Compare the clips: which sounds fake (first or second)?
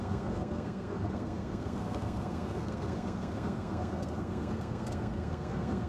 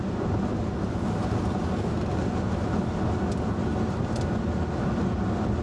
first